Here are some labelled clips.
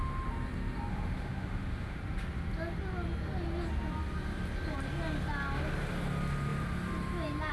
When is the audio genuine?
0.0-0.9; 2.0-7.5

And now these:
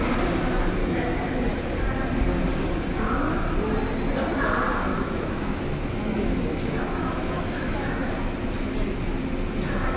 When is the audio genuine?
0.0-0.8; 1.5-4.9; 8.1-10.0

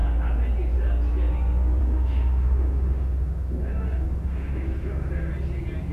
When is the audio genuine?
0.0-1.8; 5.3-5.9

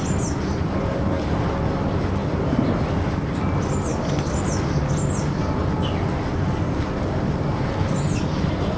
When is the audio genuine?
0.0-8.8

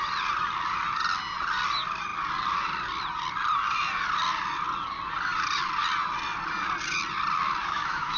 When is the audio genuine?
0.0-7.6